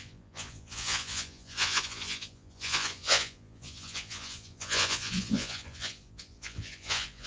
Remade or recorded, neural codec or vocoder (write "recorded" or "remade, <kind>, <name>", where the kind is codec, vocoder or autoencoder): remade, vocoder, Vocos